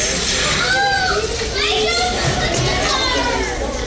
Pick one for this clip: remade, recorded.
recorded